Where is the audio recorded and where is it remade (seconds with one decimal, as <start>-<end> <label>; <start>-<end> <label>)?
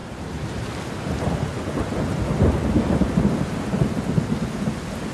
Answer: 0.0-5.1 recorded